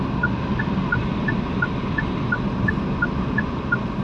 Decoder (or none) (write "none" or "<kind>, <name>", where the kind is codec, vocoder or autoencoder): none